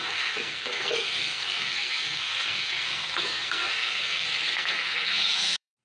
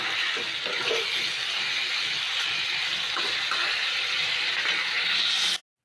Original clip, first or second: second